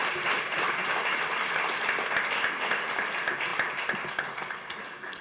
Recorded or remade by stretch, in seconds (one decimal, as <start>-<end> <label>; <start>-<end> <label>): 0.0-5.2 recorded